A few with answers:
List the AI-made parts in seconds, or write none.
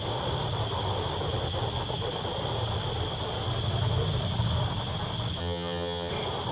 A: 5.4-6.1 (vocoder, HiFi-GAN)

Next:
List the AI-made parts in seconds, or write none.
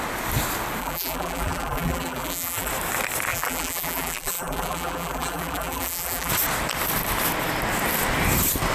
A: 0.8-2.7 (vocoder, BigVGAN v2); 3.3-6.3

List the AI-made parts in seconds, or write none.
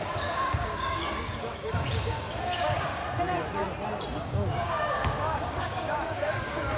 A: 0.0-3.0 (codec, DAC); 4.2-6.8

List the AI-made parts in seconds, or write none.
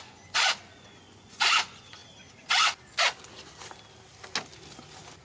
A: 0.0-2.0 (vocoder, Vocos)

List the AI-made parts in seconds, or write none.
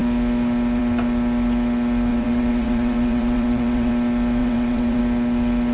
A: 2.1-3.9 (vocoder, WaveNeXt); 4.4-5.0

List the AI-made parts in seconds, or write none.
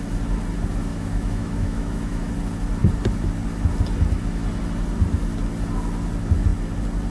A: 0.9-2.3 (autoencoder, DAC-VAE)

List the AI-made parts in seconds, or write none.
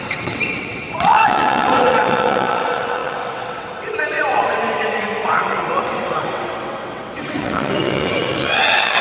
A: 0.0-9.0 (vocoder, WaveNeXt)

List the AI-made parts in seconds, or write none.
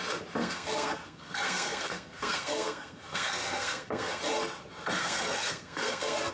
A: 0.4-4.2 (codec, SNAC); 5.0-6.3